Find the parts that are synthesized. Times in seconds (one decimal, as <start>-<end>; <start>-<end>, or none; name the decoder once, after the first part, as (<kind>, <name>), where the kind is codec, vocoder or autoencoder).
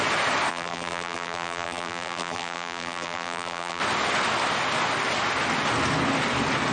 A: 0.5-3.8 (vocoder, BigVGAN v2)